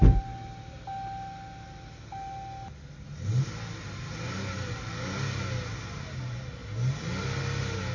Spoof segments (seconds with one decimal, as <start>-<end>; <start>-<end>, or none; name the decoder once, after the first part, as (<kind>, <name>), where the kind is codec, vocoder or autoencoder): none